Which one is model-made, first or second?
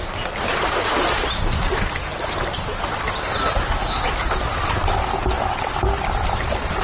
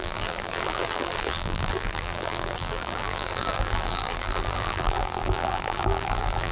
second